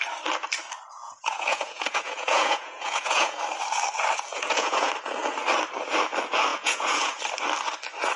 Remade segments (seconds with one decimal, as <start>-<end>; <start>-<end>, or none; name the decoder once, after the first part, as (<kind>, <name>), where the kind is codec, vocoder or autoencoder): 1.0-3.4 (vocoder, Vocos); 4.3-4.9; 6.5-7.2